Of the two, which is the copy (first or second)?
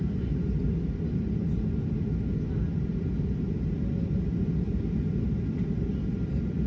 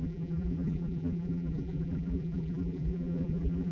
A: second